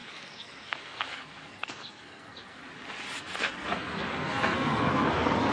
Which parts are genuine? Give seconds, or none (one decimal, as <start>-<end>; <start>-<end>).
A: 2.6-3.2